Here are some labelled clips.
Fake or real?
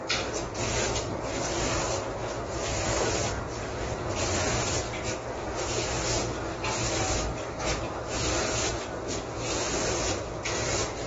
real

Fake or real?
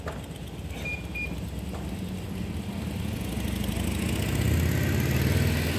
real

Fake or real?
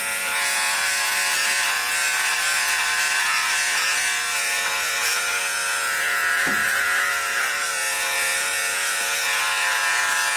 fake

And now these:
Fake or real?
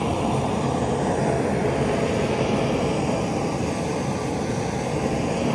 real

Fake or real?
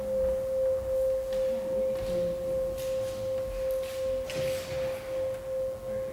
real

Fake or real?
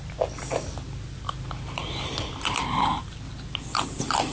real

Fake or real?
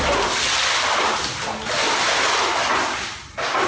real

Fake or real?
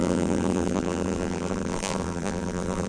fake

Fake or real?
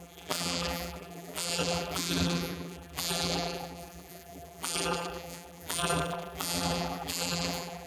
fake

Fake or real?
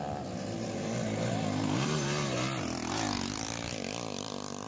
real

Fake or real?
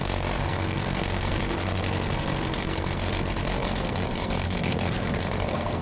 fake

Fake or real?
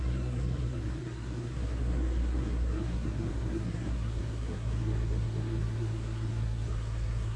fake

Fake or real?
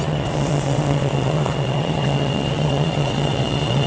fake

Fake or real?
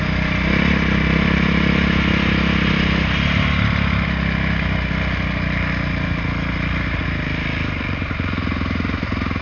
real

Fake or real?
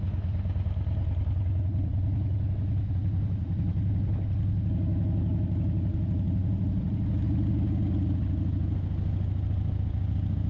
real